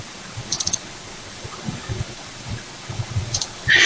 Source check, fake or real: fake